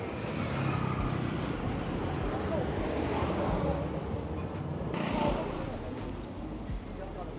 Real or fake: real